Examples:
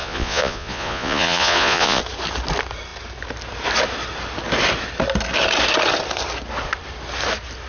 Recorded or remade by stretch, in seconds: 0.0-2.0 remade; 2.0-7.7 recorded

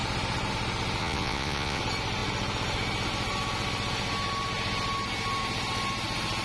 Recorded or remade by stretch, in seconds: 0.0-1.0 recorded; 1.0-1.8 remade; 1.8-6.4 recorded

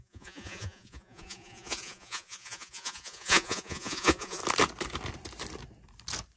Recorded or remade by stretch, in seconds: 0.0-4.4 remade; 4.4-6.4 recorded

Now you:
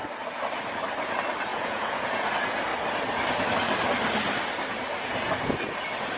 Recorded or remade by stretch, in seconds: 0.0-1.5 recorded; 1.5-2.3 remade; 2.3-6.2 recorded

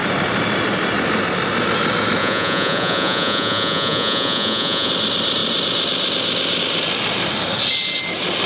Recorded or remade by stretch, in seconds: 0.0-2.2 recorded; 2.2-4.9 remade; 4.9-8.5 recorded

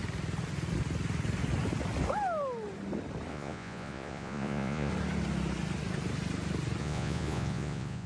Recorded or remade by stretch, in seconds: 0.0-3.3 recorded; 3.3-4.9 remade; 4.9-6.8 recorded; 6.8-8.1 remade

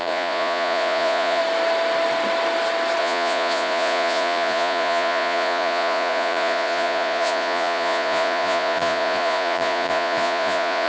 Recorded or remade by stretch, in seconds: 0.0-1.4 remade; 1.4-3.0 recorded; 3.0-10.9 remade